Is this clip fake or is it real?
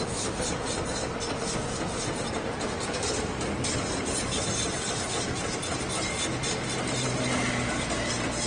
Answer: real